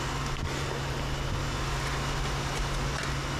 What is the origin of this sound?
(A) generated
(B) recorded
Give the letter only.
B